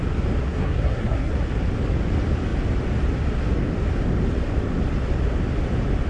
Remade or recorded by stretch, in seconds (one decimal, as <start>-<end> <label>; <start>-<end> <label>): 0.0-0.4 recorded; 0.4-1.3 remade; 1.3-6.1 recorded